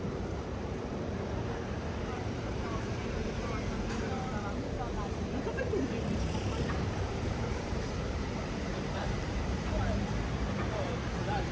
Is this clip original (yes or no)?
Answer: no